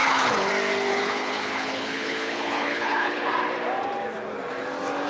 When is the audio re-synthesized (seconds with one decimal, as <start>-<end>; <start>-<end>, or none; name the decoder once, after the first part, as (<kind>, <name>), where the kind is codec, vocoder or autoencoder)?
0.0-0.5 (codec, HILCodec); 0.9-3.3